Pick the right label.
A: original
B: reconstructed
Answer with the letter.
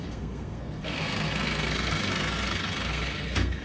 B